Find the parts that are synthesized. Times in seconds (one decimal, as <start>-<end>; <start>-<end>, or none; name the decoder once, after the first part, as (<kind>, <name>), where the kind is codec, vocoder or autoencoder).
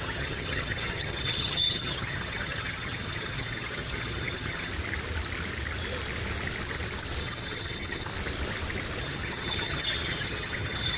0.0-4.7 (vocoder, HiFi-GAN); 7.2-8.1; 9.0-11.0